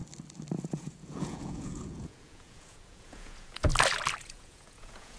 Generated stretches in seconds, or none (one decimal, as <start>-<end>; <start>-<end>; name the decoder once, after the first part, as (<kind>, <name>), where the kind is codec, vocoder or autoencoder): 0.6-3.7 (vocoder, Vocos); 4.2-5.2